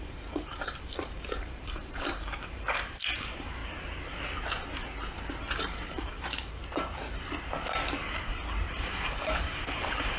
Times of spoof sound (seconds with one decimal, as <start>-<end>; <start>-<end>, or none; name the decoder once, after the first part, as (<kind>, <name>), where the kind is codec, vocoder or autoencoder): 0.0-3.6 (vocoder, BigVGAN v2); 5.4-6.6; 8.7-10.2